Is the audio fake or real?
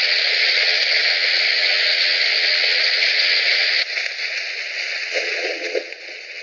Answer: fake